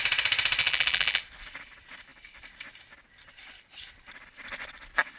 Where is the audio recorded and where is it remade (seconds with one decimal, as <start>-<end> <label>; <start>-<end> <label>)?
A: 0.0-0.6 recorded; 0.6-1.2 remade; 1.2-5.2 recorded

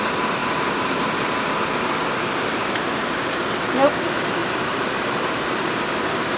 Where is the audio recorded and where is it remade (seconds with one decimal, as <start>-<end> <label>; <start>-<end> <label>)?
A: 0.0-0.4 recorded; 0.4-3.1 remade; 3.1-4.4 recorded; 4.4-5.8 remade; 5.8-6.4 recorded

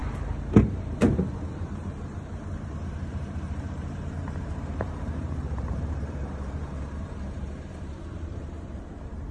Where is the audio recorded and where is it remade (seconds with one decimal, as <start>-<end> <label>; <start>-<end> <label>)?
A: 0.0-0.6 recorded; 0.6-9.3 remade

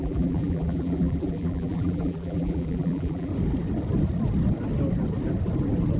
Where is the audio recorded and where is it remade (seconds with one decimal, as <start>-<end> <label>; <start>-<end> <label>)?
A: 0.0-3.3 remade; 3.3-6.0 recorded